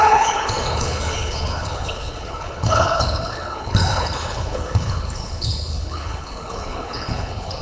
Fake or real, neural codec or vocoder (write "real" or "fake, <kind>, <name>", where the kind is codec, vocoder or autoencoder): fake, codec, HILCodec